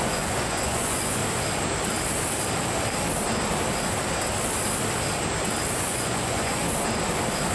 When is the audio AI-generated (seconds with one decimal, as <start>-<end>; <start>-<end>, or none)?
0.0-1.2; 5.7-6.6

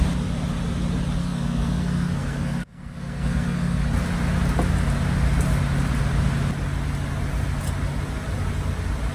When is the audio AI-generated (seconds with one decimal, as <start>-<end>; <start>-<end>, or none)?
1.2-3.8

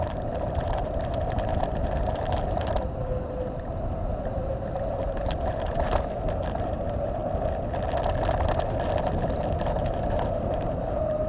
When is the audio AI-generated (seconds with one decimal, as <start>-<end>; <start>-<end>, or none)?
0.0-7.2; 9.0-11.3

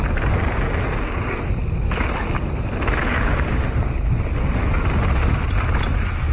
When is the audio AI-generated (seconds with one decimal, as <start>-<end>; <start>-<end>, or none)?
none